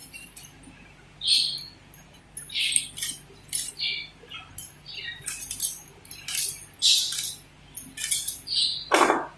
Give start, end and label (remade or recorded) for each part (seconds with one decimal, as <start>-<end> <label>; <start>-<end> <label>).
0.0-9.4 recorded